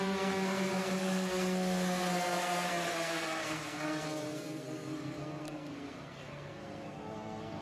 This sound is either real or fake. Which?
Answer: fake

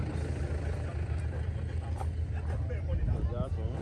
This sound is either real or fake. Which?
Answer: real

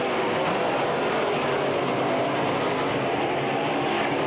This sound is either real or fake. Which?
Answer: real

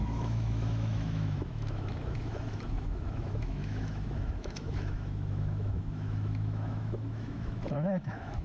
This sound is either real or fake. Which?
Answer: fake